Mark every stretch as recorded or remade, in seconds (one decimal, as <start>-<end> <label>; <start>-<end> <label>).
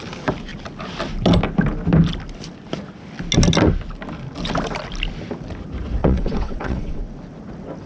0.0-6.0 recorded; 6.0-7.0 remade; 7.0-7.9 recorded